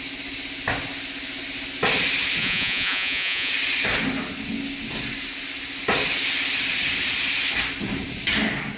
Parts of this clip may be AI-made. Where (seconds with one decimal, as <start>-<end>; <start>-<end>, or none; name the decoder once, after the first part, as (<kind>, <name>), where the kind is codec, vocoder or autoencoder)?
2.4-3.5 (vocoder, Vocos)